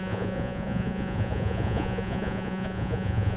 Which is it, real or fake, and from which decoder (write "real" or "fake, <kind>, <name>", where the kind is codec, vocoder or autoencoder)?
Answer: fake, vocoder, Vocos